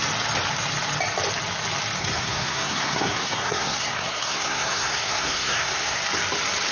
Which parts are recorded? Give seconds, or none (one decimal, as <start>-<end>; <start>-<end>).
0.0-2.0; 6.0-6.7